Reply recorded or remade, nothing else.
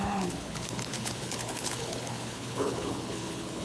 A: remade